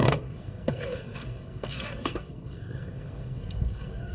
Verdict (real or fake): fake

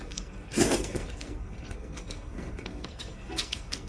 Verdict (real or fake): fake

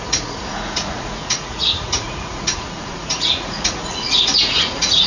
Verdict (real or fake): fake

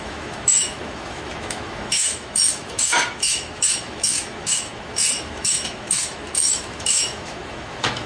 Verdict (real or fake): fake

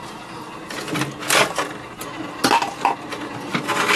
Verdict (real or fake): real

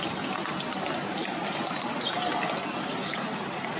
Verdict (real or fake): real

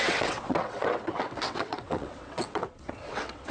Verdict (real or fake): fake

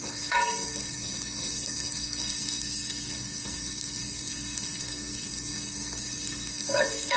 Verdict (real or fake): fake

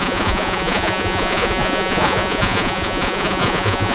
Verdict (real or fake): fake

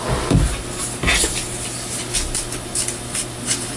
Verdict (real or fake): real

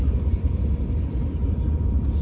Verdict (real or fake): real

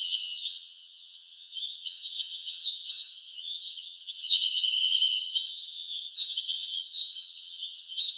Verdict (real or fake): fake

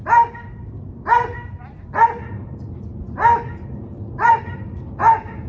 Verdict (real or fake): real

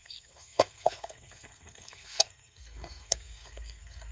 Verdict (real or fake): fake